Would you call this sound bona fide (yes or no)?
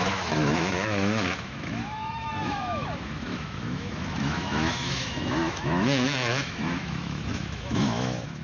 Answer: no